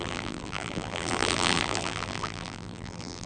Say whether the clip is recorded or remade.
remade